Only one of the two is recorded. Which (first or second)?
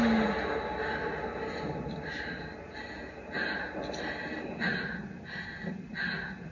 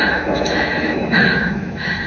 first